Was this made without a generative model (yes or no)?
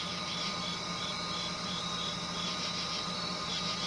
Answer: yes